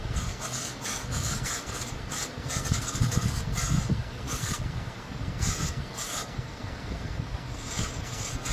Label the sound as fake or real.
fake